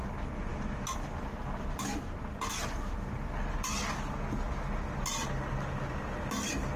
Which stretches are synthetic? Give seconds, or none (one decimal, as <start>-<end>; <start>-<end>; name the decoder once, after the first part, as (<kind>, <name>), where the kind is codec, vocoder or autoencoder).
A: none